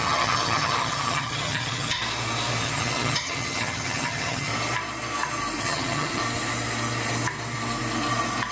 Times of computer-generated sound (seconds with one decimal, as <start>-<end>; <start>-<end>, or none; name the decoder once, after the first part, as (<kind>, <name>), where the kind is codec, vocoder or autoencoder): 0.0-2.0 (vocoder, HiFi-GAN); 2.6-4.5; 5.6-6.2